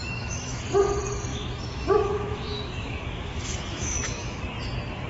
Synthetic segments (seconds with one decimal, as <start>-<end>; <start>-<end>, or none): 0.0-0.6; 1.3-4.4